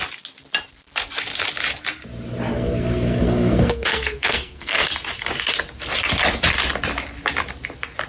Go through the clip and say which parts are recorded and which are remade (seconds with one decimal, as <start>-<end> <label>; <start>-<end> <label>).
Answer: 0.0-2.5 recorded; 2.5-4.9 remade; 4.9-8.1 recorded